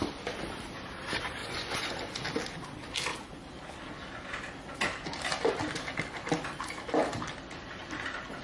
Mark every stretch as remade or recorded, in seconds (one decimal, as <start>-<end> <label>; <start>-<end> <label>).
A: 0.0-1.4 recorded; 1.4-1.9 remade; 1.9-8.4 recorded